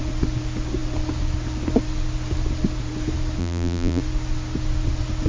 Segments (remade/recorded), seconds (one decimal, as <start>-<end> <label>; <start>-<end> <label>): 0.0-3.4 recorded; 3.4-4.0 remade; 4.0-5.3 recorded